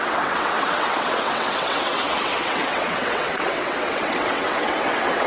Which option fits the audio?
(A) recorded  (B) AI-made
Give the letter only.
B